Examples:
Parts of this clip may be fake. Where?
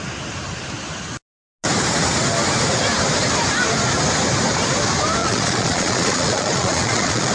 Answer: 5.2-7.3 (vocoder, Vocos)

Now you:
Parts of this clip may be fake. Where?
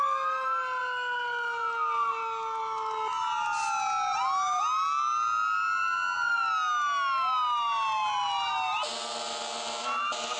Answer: none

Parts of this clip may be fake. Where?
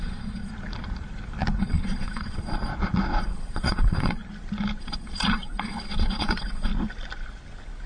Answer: 0.0-0.5 (vocoder, Vocos); 1.6-2.7; 3.2-4.2; 4.8-6.7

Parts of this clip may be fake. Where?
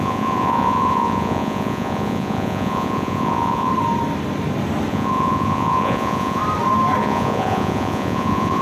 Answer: 0.0-3.7 (vocoder, Vocos); 4.9-6.4; 7.0-8.6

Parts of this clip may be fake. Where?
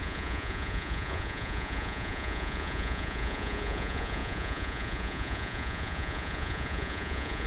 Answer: 0.0-7.5 (vocoder, Vocos)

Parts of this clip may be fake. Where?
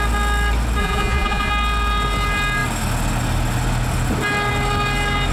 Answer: 0.8-1.5 (vocoder, Vocos)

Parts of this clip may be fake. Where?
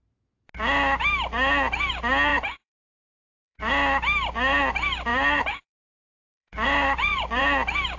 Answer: 2.3-3.6 (vocoder, Vocos); 5.1-7.4